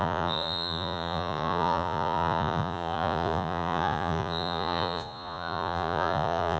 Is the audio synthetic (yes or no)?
yes